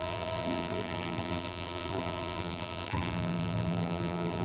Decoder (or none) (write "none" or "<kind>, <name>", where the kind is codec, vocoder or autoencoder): vocoder, BigVGAN v2